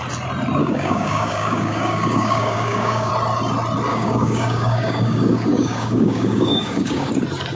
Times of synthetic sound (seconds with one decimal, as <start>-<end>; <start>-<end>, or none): 0.6-3.1; 3.9-7.1